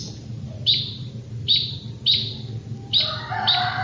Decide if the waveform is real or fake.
fake